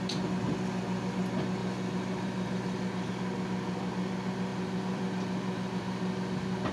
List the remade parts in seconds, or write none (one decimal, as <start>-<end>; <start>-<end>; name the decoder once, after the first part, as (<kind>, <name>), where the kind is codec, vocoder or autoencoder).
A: 1.6-3.1 (vocoder, BigVGAN v2); 4.5-6.7